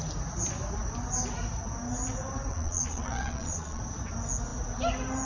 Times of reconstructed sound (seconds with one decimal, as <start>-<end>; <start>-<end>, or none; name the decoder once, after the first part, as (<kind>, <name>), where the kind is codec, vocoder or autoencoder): 2.5-3.8 (vocoder, Vocos)